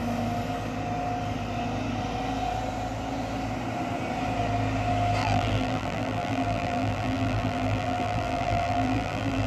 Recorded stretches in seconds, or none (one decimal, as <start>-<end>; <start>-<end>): 0.0-5.2